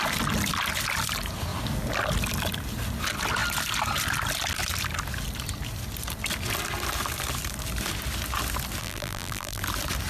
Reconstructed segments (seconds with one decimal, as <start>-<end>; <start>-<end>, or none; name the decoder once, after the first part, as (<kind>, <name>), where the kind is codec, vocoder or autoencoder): 8.8-9.6 (vocoder, BigVGAN v2)